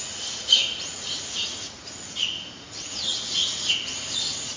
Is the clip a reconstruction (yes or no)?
yes